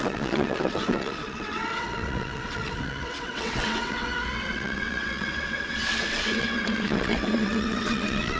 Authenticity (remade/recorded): remade